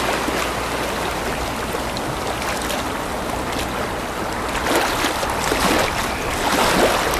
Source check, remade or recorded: recorded